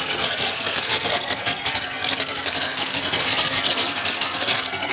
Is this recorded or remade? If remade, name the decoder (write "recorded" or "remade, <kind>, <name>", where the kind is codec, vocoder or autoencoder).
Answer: remade, codec, SNAC